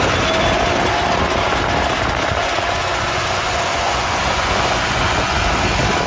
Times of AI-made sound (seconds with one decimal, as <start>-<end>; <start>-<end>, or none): 2.4-5.4